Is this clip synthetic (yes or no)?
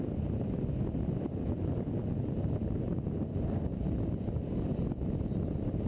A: no